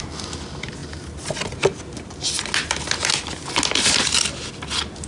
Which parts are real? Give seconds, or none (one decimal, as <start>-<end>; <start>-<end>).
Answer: 0.0-5.1